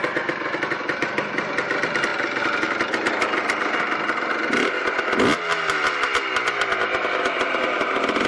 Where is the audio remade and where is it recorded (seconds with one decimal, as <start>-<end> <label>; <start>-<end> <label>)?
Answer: 0.0-8.3 recorded